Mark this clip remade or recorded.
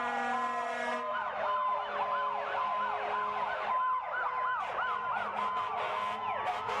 recorded